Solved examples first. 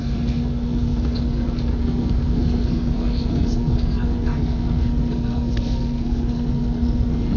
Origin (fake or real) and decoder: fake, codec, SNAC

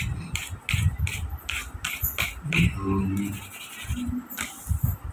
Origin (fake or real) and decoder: real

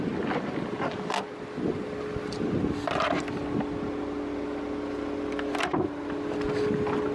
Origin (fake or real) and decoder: real